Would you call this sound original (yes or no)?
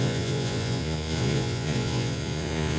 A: no